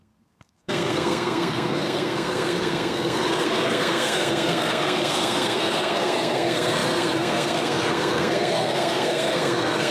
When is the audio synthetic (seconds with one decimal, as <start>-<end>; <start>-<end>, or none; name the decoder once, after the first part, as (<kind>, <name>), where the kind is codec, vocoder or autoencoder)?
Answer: 0.0-9.9 (codec, SNAC)